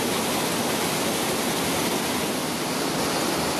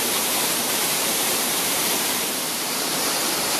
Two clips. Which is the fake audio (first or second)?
second